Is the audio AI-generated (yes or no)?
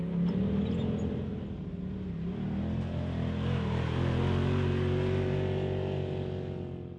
no